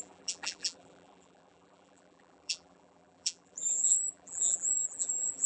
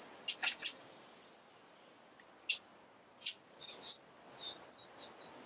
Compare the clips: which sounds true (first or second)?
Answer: second